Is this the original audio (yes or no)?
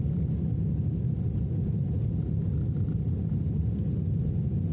yes